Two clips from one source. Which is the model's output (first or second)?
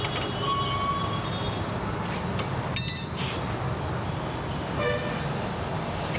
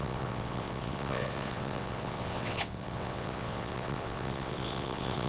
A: second